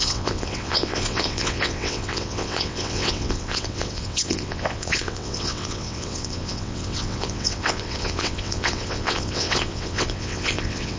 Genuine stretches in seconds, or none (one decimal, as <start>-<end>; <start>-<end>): none